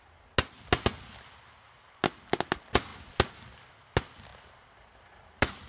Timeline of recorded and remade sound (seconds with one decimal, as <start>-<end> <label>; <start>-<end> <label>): 0.0-4.3 recorded; 4.3-5.7 remade